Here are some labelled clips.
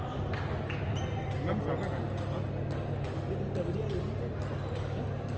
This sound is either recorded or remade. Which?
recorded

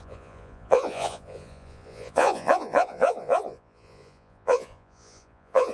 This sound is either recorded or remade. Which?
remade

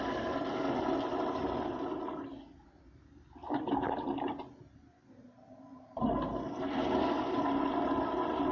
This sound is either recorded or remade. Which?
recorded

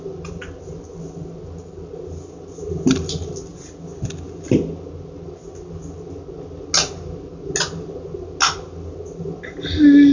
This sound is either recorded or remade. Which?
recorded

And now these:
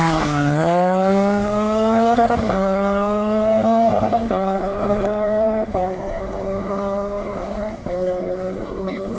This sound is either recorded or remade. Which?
remade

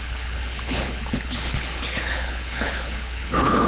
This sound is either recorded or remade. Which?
remade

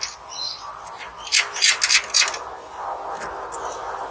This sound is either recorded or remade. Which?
recorded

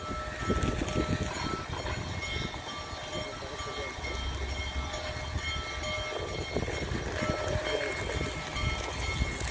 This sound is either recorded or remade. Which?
recorded